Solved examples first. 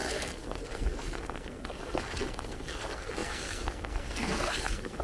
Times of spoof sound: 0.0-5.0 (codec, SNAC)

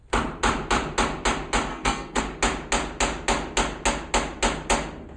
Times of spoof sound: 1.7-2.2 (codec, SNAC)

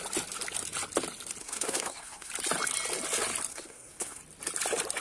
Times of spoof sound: 1.4-2.3 (codec, SNAC); 3.5-4.2